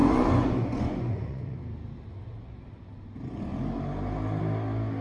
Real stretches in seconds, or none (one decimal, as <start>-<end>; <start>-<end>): 1.6-5.0